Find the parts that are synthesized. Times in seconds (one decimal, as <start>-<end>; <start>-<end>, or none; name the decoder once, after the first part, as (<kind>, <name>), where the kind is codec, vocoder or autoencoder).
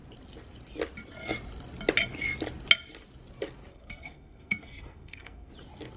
3.7-5.5 (codec, SNAC)